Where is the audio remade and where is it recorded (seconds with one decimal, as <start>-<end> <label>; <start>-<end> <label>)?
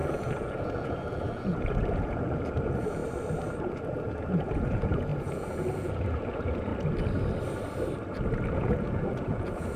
0.0-3.0 remade; 3.0-3.6 recorded; 3.6-6.7 remade; 6.7-8.5 recorded; 8.5-9.8 remade